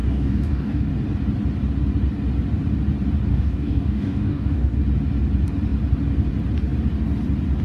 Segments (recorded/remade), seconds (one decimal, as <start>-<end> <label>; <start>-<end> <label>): 0.0-0.9 remade; 0.9-3.3 recorded; 3.3-4.8 remade; 4.8-7.6 recorded